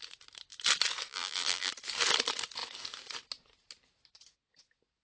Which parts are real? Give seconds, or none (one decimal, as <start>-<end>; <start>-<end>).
0.0-1.1; 1.7-5.0